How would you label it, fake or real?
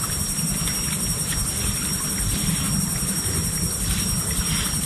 fake